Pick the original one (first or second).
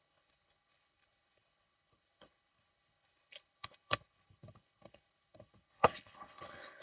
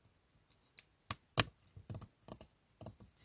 second